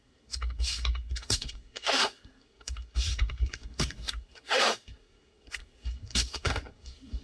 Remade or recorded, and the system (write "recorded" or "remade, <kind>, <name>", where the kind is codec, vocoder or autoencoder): remade, codec, SNAC